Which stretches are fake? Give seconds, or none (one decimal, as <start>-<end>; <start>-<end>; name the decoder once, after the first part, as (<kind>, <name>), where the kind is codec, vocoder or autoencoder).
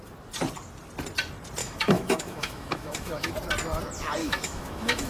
1.6-3.3 (autoencoder, DAC-VAE); 4.2-5.1